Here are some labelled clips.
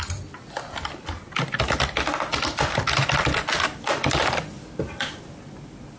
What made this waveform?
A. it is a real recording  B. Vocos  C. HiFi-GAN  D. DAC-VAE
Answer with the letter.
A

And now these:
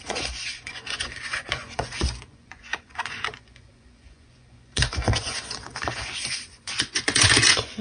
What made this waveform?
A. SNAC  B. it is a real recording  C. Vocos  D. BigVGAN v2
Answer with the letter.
C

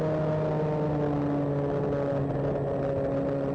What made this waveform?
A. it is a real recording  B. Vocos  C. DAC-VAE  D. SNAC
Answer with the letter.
A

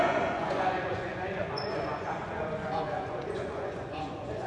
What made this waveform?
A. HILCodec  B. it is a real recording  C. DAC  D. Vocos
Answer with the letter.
D